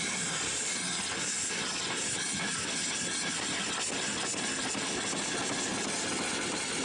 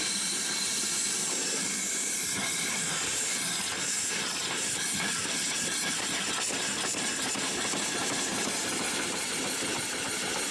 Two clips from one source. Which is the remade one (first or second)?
second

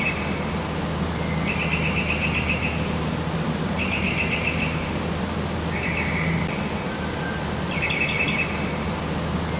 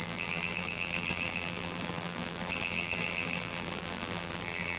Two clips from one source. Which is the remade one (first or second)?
second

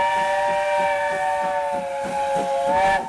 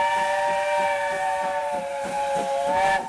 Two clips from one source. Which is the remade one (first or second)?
second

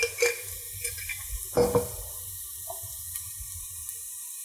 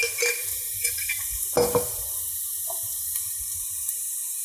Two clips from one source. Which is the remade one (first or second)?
second